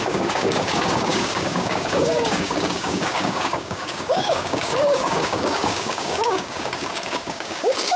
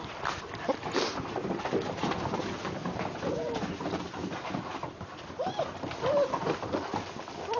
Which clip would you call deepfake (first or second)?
first